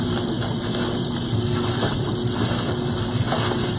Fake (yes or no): no